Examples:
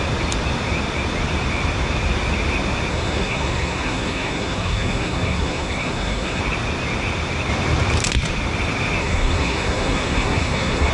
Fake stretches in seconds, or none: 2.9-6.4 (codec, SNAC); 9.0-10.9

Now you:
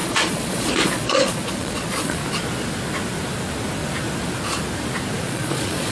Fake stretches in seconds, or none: 0.0-2.2 (vocoder, Vocos); 5.2-5.9

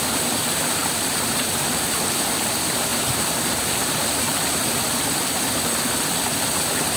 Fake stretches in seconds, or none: 0.8-2.0 (vocoder, BigVGAN v2); 2.9-4.9

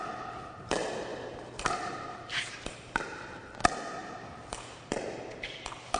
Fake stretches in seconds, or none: 0.0-6.0 (vocoder, BigVGAN v2)

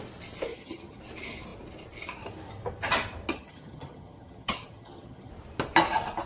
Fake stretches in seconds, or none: 0.5-1.0 (vocoder, HiFi-GAN); 3.3-5.3

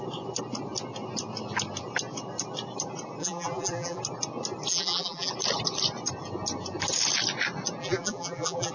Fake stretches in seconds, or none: 3.2-4.0 (vocoder, BigVGAN v2); 4.7-5.3; 7.8-8.7

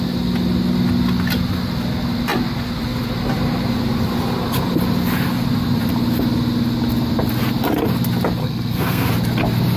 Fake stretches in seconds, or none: 8.4-9.1 (codec, SNAC)

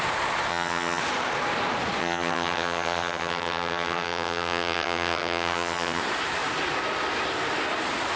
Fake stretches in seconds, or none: 0.5-1.0 (vocoder, HiFi-GAN); 2.0-6.0